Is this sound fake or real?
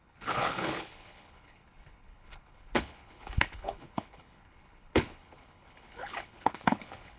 fake